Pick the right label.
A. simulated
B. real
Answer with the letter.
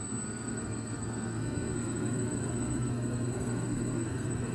A